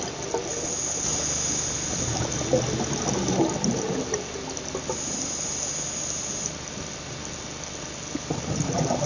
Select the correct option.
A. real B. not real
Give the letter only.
A